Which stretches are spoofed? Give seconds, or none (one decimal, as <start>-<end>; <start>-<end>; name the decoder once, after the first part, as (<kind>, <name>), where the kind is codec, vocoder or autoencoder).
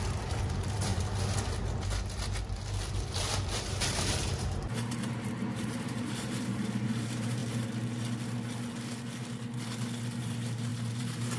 0.0-0.9 (vocoder, BigVGAN v2); 3.1-7.4; 10.2-11.4